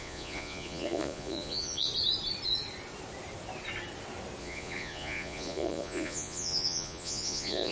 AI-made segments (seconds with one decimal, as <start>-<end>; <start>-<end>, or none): 0.0-1.9; 4.4-7.7